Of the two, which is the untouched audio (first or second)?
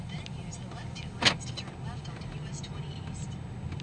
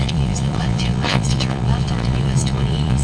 first